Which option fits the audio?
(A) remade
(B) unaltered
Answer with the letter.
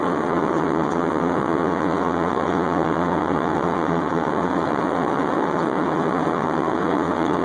A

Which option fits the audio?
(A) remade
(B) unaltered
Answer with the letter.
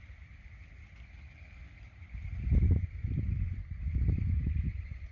B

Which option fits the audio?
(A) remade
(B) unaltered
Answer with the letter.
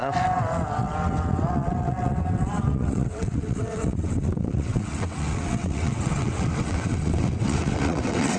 A